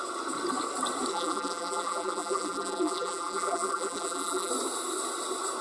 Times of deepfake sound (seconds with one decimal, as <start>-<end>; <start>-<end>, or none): 1.1-4.5